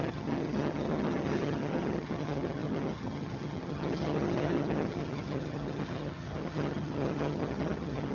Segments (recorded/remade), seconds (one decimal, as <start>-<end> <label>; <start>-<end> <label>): 0.0-8.1 remade